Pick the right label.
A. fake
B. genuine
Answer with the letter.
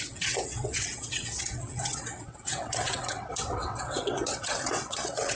A